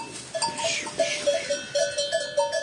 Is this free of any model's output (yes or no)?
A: yes